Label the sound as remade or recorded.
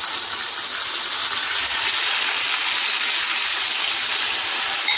recorded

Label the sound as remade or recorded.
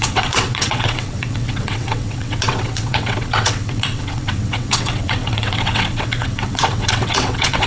remade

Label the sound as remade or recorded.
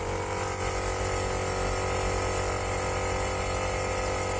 recorded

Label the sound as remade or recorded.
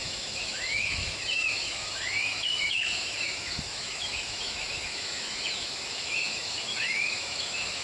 remade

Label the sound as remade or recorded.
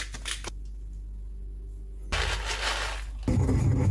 recorded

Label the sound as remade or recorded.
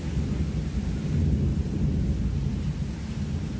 recorded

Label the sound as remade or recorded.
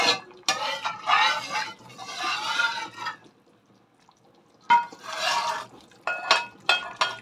recorded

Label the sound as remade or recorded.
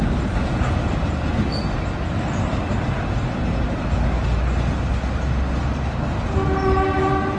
recorded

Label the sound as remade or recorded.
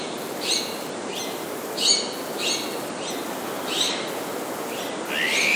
recorded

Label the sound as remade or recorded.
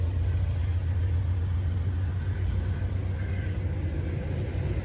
recorded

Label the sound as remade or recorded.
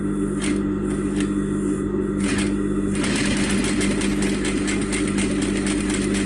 recorded